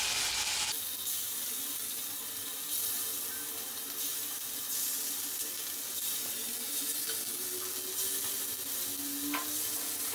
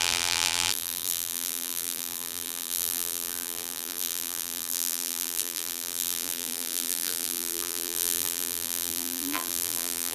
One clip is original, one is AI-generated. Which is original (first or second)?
first